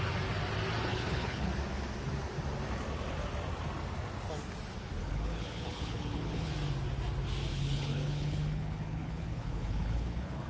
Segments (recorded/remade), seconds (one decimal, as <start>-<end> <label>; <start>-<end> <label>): 0.0-0.9 recorded; 0.9-1.5 remade; 1.5-5.0 recorded; 5.0-6.5 remade; 6.5-7.5 recorded; 7.5-10.5 remade